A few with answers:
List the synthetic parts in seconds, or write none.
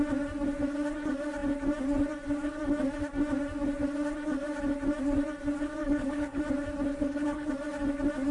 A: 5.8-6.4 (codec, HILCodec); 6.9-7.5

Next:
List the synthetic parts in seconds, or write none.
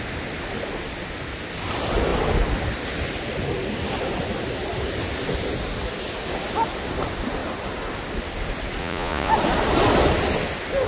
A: 8.8-9.3 (vocoder, Vocos)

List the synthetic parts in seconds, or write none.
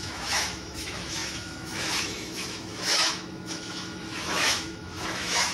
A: 0.0-5.5 (autoencoder, DAC-VAE)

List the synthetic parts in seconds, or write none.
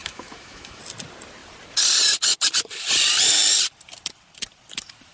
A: 0.0-0.8 (autoencoder, DAC-VAE)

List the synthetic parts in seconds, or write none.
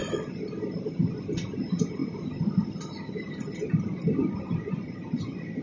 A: 1.2-5.6 (vocoder, BigVGAN v2)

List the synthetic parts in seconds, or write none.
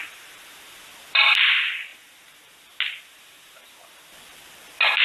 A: none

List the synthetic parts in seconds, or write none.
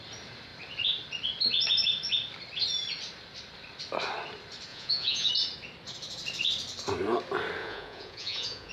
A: 4.7-5.3 (vocoder, Vocos); 7.6-8.7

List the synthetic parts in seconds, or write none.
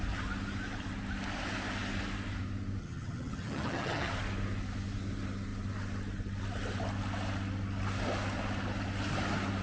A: 2.8-4.1 (vocoder, HiFi-GAN)